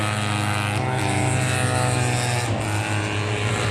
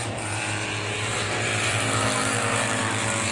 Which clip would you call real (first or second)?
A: first